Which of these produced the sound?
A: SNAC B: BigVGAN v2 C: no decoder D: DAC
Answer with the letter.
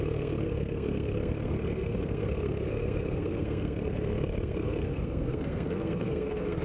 A